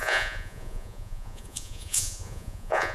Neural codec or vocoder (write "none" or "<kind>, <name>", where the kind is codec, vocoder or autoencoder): vocoder, Vocos